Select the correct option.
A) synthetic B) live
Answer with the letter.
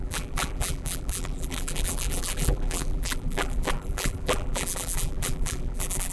A